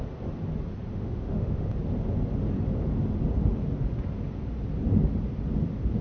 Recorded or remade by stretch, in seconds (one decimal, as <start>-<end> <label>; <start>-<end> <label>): 0.0-0.9 recorded; 0.9-1.7 remade; 1.7-6.0 recorded